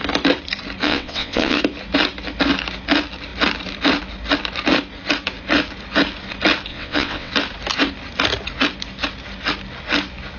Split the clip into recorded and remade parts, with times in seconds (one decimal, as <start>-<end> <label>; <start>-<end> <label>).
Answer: 0.0-0.8 recorded; 0.8-1.6 remade; 1.6-6.7 recorded; 6.7-7.3 remade; 7.3-10.4 recorded